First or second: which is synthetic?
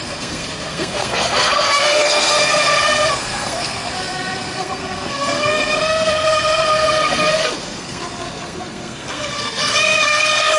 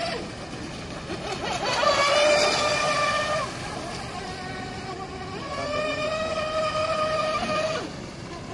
first